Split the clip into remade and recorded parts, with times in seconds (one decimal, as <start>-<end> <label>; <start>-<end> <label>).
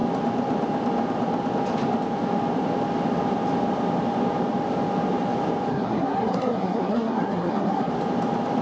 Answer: 0.0-5.7 recorded; 5.7-7.9 remade; 7.9-8.6 recorded